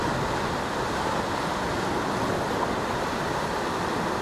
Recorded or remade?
recorded